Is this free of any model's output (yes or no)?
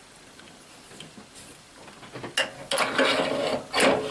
yes